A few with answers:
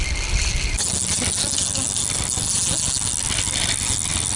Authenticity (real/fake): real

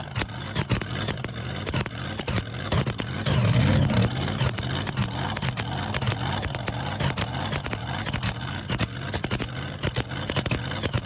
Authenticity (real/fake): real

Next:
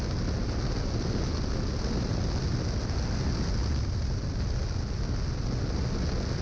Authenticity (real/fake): real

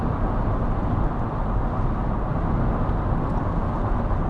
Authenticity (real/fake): real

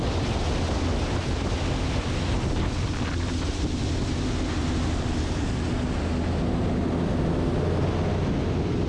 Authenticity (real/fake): real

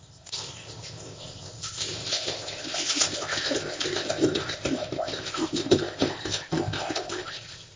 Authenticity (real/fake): fake